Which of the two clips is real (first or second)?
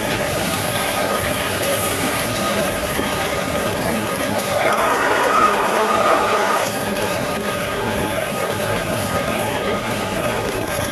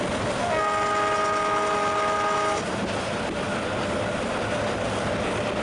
second